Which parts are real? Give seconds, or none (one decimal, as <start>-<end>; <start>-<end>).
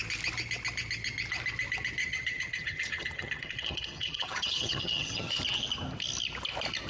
0.0-2.0; 5.4-6.9